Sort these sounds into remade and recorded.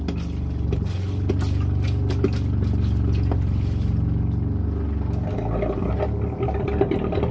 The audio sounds recorded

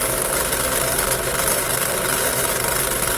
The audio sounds recorded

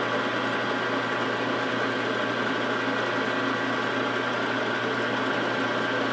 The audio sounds recorded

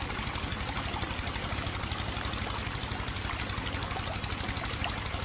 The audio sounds recorded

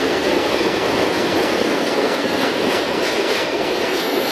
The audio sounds remade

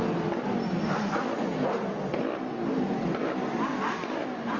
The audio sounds recorded